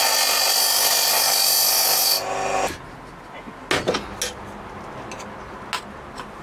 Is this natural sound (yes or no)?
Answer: yes